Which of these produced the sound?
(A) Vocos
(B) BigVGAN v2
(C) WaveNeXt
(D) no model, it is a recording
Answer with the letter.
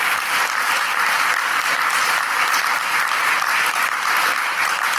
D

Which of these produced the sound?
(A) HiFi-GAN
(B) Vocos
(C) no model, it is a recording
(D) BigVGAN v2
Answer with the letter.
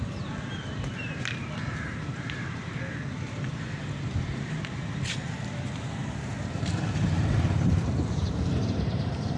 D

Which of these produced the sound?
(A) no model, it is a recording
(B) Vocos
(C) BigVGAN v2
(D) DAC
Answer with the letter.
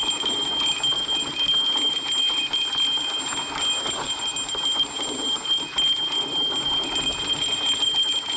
A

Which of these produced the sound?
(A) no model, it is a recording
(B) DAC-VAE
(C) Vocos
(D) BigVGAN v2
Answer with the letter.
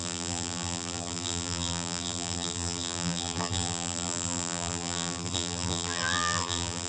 D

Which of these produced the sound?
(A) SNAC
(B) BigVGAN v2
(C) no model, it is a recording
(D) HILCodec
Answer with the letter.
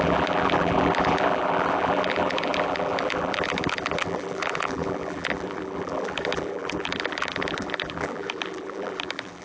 B